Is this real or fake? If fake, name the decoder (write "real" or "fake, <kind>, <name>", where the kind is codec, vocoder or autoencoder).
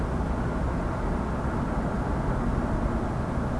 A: real